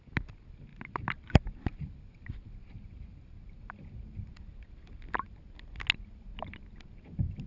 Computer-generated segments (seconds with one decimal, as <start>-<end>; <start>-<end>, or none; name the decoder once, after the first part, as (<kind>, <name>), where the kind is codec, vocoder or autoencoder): none